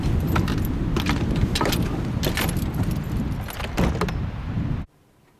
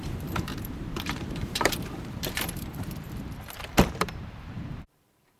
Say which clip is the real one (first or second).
first